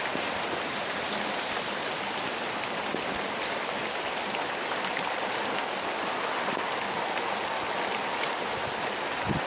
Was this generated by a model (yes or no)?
no